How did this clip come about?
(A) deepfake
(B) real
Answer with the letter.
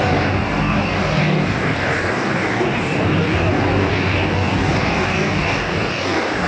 A